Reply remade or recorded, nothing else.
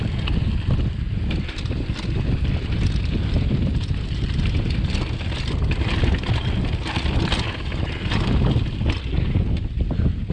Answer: recorded